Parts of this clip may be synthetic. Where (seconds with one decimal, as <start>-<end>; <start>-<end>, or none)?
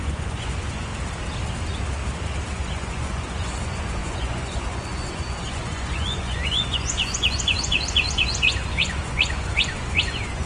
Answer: 0.0-0.9; 2.5-10.5